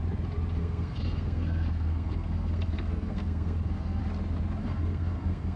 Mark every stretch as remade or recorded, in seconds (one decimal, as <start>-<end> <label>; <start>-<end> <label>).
0.0-0.6 recorded; 0.6-4.0 remade; 4.0-4.6 recorded; 4.6-5.6 remade